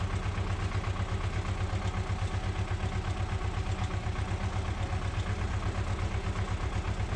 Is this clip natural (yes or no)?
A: yes